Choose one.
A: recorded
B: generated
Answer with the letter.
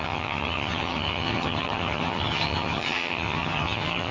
B